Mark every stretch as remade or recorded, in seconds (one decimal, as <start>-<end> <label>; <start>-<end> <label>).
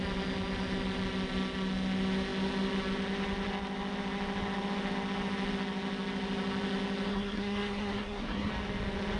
0.0-7.1 recorded; 7.1-8.5 remade; 8.5-9.2 recorded